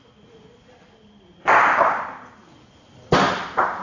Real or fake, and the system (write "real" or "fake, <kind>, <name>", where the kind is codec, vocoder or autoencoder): real